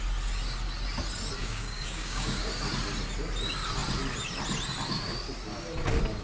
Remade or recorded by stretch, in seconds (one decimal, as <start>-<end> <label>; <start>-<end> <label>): 0.0-1.4 recorded; 1.4-2.5 remade; 2.5-6.2 recorded